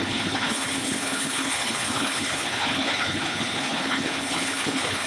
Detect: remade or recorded remade